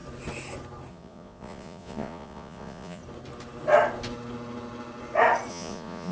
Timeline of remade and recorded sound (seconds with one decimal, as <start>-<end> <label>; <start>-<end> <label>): 0.0-0.9 recorded; 0.9-3.0 remade; 3.0-5.5 recorded; 5.5-6.1 remade